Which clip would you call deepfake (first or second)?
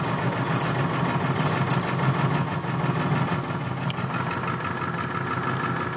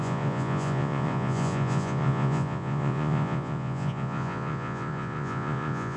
second